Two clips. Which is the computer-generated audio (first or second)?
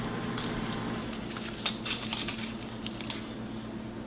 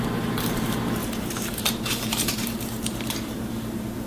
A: second